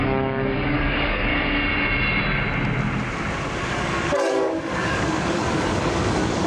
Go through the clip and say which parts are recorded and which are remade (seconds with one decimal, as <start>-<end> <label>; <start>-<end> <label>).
0.0-1.3 remade; 1.3-3.6 recorded; 3.6-6.5 remade